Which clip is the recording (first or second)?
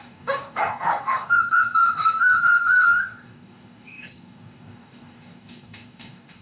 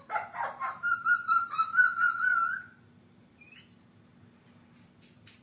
second